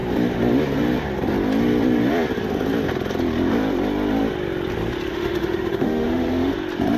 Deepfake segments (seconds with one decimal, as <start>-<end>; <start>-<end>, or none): 5.1-6.5